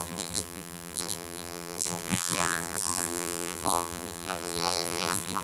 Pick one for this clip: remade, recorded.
remade